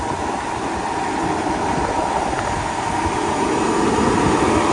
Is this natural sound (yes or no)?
yes